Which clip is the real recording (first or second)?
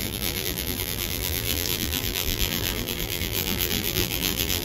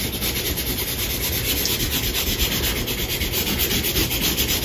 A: second